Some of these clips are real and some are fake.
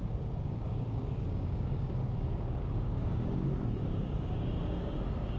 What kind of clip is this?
fake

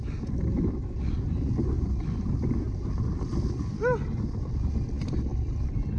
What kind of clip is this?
real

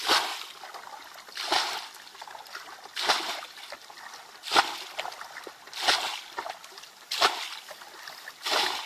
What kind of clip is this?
real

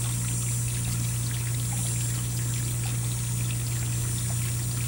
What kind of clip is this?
real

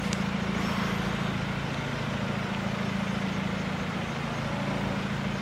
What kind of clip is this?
real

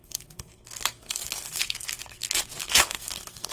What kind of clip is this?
fake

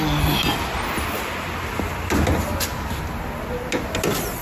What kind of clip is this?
real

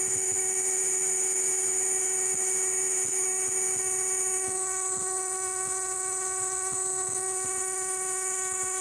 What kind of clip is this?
fake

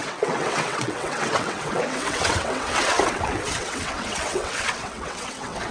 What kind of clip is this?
fake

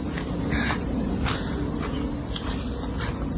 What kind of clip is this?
real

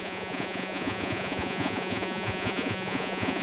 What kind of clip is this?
fake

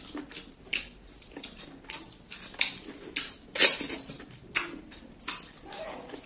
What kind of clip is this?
real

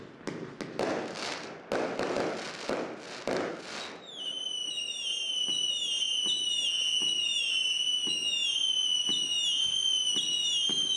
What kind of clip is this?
real